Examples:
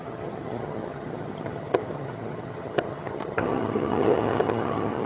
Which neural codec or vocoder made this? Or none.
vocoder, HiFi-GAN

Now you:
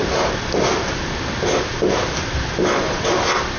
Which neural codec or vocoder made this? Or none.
none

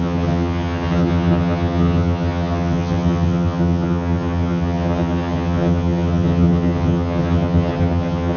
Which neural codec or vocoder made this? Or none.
vocoder, HiFi-GAN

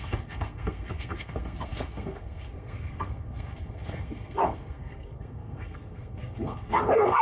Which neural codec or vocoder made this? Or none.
codec, SNAC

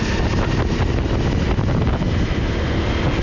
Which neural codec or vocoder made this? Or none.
none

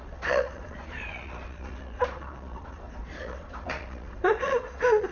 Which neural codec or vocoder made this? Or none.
vocoder, Vocos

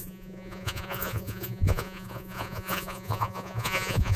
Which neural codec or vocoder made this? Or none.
vocoder, Vocos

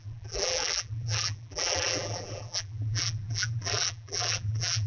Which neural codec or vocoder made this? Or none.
vocoder, BigVGAN v2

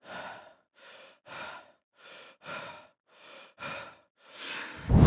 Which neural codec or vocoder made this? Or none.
vocoder, BigVGAN v2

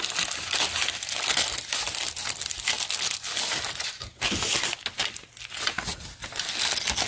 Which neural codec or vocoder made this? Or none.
none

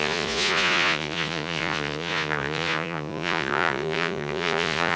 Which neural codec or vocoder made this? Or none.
vocoder, Vocos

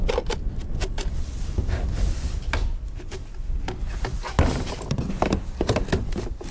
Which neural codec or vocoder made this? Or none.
none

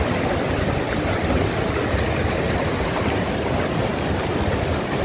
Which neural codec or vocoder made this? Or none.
none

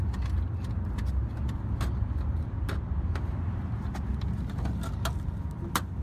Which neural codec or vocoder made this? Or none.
none